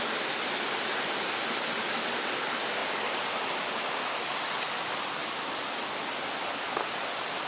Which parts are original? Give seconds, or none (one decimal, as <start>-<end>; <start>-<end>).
0.0-7.5